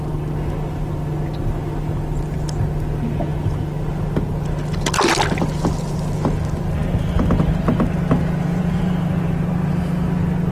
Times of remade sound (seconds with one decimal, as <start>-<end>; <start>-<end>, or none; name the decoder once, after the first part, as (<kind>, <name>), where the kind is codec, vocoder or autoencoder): 6.8-9.7 (vocoder, BigVGAN v2)